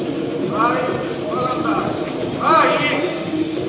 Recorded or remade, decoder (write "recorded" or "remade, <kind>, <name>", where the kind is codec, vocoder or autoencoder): remade, vocoder, BigVGAN v2